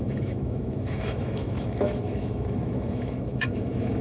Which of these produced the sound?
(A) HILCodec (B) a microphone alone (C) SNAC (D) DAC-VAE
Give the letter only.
D